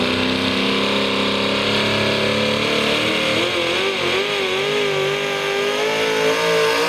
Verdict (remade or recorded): recorded